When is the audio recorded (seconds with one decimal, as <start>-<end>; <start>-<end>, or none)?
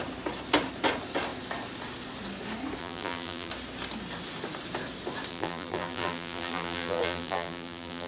0.0-2.8; 3.5-5.3